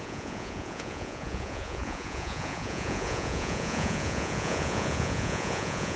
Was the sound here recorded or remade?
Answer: remade